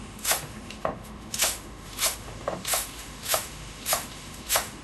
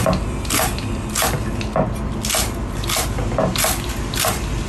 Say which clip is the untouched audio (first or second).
second